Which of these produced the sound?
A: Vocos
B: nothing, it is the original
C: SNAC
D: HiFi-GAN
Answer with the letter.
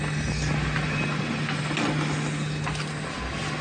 B